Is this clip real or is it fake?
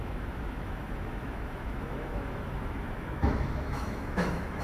fake